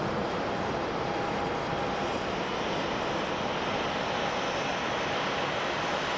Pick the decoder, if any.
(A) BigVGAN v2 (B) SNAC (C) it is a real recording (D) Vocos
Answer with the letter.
C